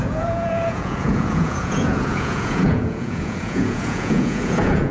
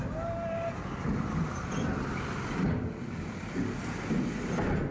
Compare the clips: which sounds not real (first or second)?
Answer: first